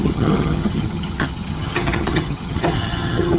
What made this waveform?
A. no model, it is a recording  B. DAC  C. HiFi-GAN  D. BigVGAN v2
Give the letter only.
C